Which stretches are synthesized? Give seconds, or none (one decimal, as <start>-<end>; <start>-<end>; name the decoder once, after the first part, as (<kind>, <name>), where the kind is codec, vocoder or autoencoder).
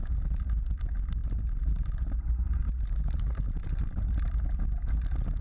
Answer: 1.2-4.4 (vocoder, BigVGAN v2)